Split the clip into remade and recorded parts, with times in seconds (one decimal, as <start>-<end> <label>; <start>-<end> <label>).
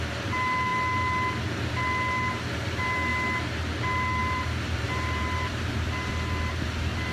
0.0-4.2 recorded; 4.2-5.7 remade; 5.7-7.1 recorded